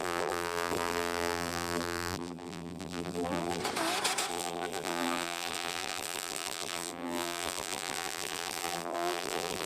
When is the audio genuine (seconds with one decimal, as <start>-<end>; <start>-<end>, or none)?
3.6-4.3